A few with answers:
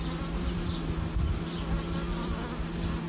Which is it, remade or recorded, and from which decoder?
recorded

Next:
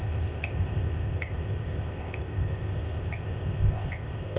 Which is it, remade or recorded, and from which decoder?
remade, codec, ZipCodec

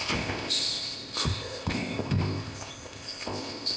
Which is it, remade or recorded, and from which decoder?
remade, codec, ZipCodec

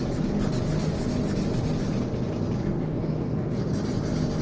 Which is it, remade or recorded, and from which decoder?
recorded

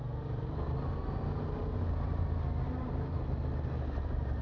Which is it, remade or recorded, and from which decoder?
recorded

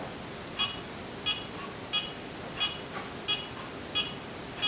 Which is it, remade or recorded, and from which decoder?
recorded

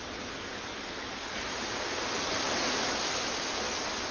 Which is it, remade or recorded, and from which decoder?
recorded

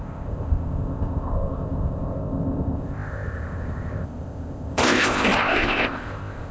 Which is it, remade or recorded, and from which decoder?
remade, codec, ZipCodec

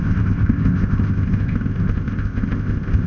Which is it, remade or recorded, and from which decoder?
remade, codec, ZipCodec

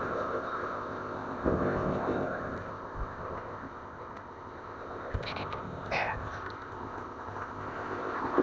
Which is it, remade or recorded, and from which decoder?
remade, codec, ZipCodec